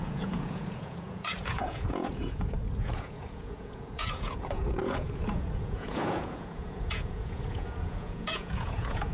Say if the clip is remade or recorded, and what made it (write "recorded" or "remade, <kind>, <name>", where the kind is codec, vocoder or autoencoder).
remade, vocoder, Vocos